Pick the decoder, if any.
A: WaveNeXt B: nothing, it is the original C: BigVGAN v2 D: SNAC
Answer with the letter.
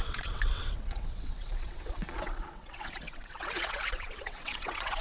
A